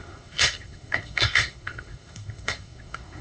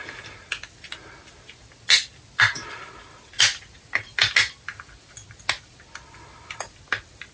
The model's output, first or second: first